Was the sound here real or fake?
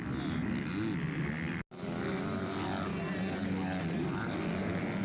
real